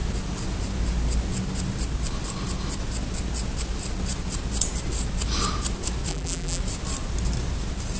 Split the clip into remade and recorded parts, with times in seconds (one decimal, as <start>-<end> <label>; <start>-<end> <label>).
0.0-6.1 recorded; 6.1-6.6 remade; 6.6-8.0 recorded